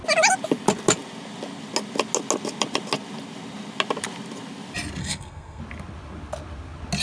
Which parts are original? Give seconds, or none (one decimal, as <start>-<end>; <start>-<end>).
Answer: 0.0-5.0; 5.6-7.0